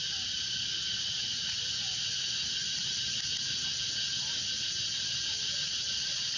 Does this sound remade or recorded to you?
recorded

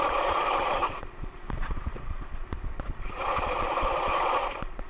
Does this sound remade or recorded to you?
remade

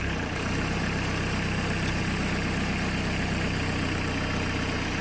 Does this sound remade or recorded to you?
recorded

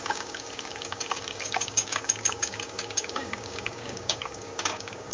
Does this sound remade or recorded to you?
remade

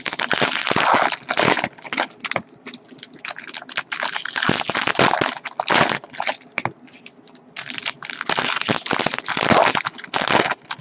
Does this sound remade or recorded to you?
recorded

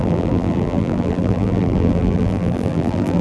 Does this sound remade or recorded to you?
remade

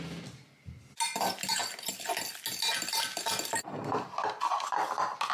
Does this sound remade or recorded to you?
recorded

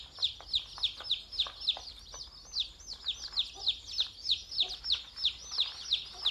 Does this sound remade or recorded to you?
recorded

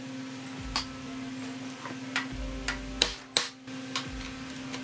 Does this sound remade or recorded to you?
recorded